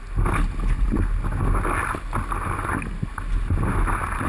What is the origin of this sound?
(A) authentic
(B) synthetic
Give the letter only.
A